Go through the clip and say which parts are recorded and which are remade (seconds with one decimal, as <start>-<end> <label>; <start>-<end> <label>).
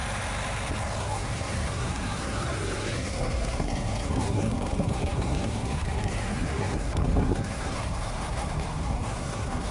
0.0-1.0 recorded; 1.0-9.7 remade